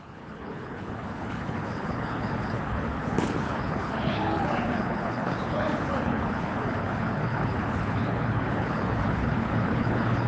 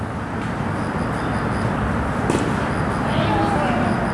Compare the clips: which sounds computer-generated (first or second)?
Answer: first